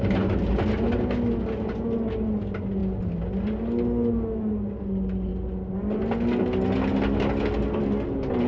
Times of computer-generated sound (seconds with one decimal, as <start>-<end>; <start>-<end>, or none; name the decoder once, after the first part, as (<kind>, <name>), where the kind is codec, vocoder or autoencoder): none